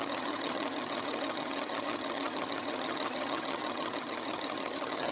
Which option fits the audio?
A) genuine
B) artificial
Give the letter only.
B